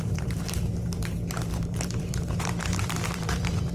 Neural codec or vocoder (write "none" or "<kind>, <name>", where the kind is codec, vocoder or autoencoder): vocoder, BigVGAN v2